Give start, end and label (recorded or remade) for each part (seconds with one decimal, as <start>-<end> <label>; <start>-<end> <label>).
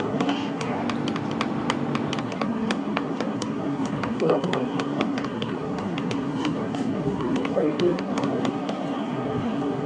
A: 0.0-0.8 remade; 0.8-2.2 recorded; 2.2-9.9 remade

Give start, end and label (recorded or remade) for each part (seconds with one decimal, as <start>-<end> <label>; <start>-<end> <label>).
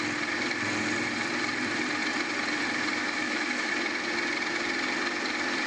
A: 0.0-3.0 recorded; 3.0-3.7 remade; 3.7-5.7 recorded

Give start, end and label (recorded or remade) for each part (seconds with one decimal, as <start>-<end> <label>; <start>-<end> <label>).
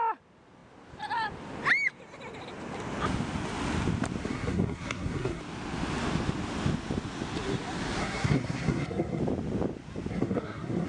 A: 0.0-4.2 recorded; 4.2-5.4 remade; 5.4-8.0 recorded; 8.0-9.2 remade; 9.2-10.1 recorded; 10.1-10.9 remade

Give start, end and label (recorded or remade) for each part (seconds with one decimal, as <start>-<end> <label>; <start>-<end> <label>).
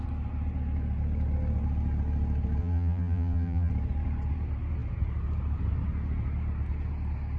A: 0.0-2.6 recorded; 2.6-3.7 remade; 3.7-7.4 recorded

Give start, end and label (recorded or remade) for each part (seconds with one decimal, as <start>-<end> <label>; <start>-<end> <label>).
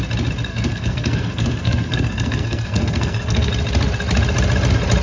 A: 0.0-0.5 recorded; 0.5-3.5 remade; 3.5-5.0 recorded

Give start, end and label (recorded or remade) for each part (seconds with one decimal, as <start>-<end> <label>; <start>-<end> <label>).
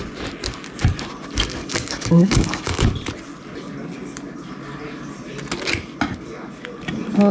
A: 0.0-1.6 recorded; 1.6-2.8 remade; 2.8-7.3 recorded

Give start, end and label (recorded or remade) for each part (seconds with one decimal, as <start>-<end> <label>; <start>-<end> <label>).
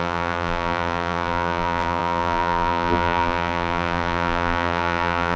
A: 0.0-5.4 remade